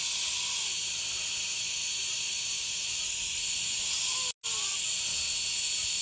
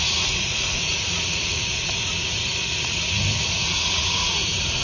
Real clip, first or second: first